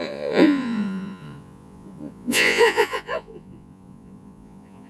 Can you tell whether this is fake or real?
fake